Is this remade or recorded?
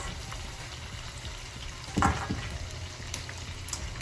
recorded